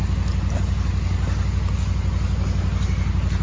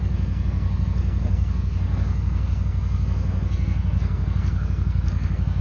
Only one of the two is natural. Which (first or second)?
first